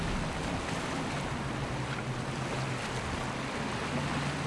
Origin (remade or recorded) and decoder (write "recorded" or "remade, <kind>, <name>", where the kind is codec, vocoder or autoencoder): recorded